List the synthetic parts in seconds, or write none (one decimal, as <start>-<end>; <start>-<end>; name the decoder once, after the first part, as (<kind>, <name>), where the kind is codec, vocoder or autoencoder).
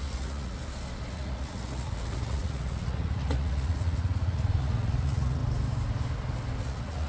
0.0-0.6 (vocoder, Vocos); 1.1-5.4; 6.6-7.1